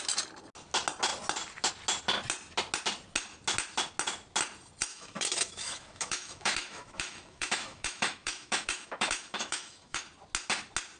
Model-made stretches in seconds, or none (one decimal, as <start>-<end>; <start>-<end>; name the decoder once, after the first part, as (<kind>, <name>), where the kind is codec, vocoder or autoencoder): 4.9-10.0 (autoencoder, DAC-VAE)